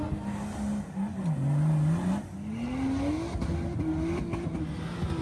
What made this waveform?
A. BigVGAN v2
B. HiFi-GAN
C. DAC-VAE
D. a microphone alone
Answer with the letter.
D